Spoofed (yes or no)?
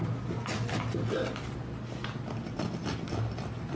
no